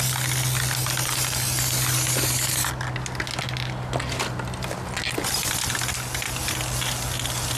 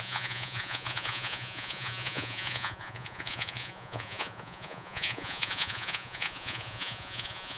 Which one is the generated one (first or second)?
second